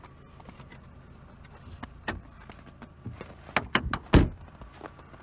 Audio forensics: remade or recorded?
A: recorded